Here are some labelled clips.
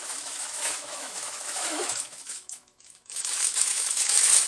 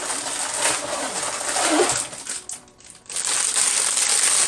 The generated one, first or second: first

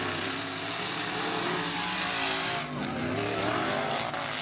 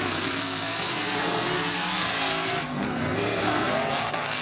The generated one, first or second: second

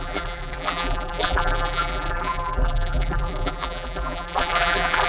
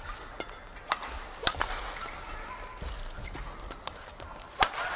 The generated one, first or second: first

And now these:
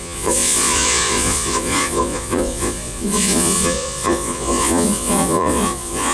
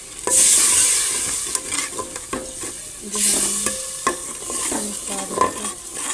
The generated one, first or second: first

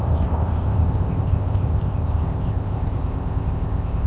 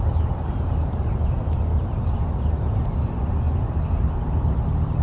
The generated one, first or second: first